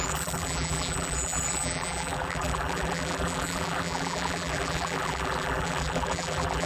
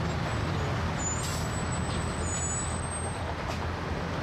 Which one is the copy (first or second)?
first